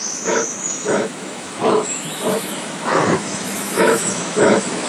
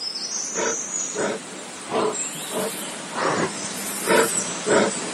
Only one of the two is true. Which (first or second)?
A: second